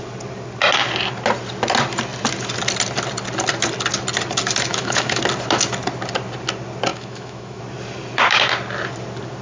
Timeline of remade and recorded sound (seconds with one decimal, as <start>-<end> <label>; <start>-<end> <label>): 0.0-4.7 recorded; 4.7-5.2 remade; 5.2-6.9 recorded; 6.9-7.6 remade; 7.6-9.4 recorded